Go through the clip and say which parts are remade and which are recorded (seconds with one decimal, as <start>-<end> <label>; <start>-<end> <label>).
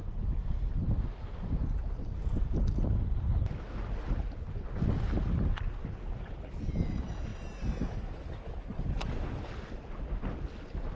0.0-10.9 recorded